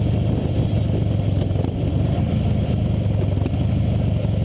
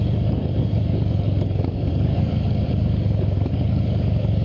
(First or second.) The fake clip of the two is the second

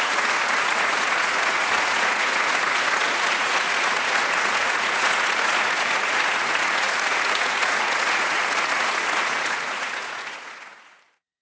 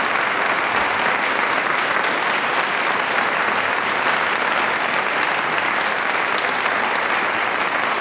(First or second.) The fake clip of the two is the first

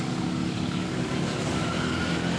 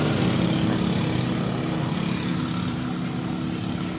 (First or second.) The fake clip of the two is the first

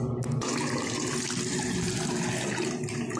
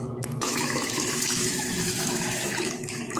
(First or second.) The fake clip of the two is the second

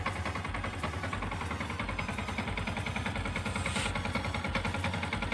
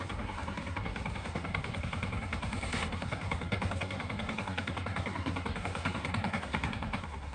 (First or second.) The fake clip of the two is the second